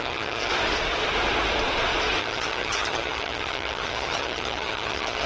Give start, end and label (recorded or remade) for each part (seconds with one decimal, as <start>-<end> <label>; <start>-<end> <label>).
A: 0.0-0.5 remade; 0.5-2.2 recorded; 2.2-5.3 remade